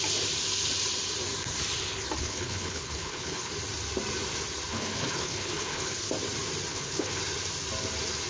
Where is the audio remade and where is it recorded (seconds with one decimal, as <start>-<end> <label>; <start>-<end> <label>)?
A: 0.0-2.2 recorded; 2.2-3.5 remade; 3.5-4.7 recorded; 4.7-6.1 remade; 6.1-6.7 recorded; 6.7-7.2 remade; 7.2-8.3 recorded